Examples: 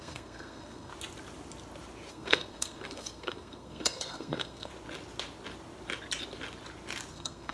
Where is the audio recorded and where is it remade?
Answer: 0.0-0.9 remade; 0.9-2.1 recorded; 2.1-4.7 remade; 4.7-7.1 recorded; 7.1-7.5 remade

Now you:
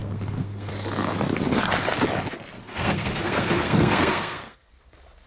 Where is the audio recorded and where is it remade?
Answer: 0.0-0.7 remade; 0.7-2.7 recorded; 2.7-4.7 remade; 4.7-5.3 recorded

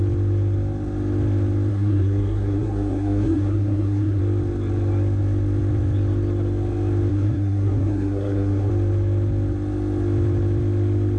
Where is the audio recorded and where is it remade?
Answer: 0.0-1.7 recorded; 1.7-4.2 remade; 4.2-7.1 recorded; 7.1-8.7 remade; 8.7-11.2 recorded

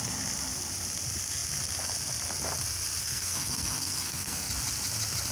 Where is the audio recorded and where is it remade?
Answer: 0.0-3.0 recorded; 3.0-4.5 remade; 4.5-5.3 recorded

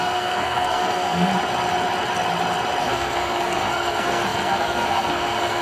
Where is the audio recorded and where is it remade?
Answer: 0.0-1.3 remade; 1.3-2.8 recorded; 2.8-5.6 remade